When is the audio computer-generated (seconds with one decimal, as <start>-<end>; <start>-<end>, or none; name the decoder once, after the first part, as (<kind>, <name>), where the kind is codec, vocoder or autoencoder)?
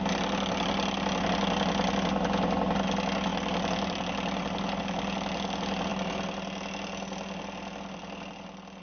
none